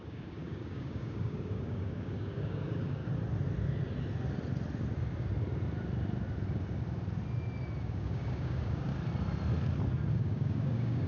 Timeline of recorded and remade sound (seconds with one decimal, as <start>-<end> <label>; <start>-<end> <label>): 0.0-3.0 remade; 3.0-7.8 recorded; 7.8-8.9 remade; 8.9-10.1 recorded; 10.1-11.1 remade